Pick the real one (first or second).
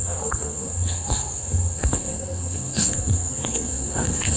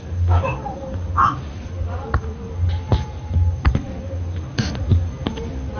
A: second